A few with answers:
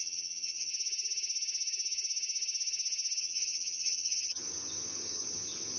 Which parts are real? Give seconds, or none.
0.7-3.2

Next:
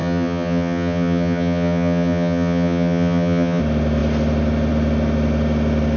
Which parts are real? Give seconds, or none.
3.6-6.0

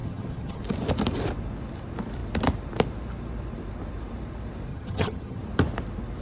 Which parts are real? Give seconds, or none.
0.6-4.7; 5.4-6.2

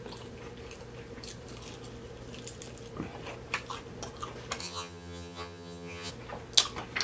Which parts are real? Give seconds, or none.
0.0-4.6; 6.1-7.0

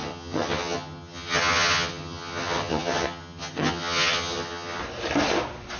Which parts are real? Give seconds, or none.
4.8-5.8

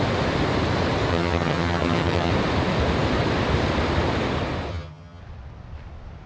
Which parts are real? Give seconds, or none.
0.0-1.1; 2.3-4.7; 5.2-6.3

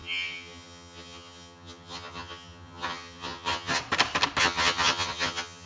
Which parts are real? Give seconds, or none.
3.8-4.4

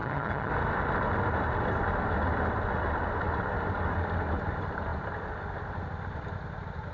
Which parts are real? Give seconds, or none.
0.5-6.9